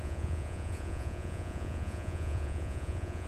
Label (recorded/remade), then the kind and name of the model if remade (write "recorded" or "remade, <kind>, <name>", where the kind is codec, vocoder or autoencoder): remade, vocoder, Vocos